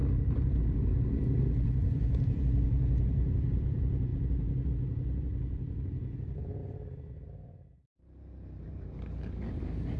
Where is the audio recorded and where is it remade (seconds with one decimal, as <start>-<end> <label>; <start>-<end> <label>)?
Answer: 0.0-6.6 remade; 6.6-7.1 recorded; 7.1-10.0 remade